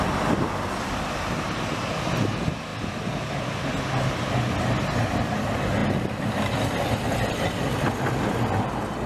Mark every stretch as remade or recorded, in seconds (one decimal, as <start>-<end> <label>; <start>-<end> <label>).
0.0-9.1 recorded